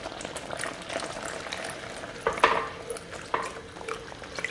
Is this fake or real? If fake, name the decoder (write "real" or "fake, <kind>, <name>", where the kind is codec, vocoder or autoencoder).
real